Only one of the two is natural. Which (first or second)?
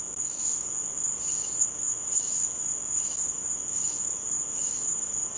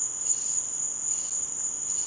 second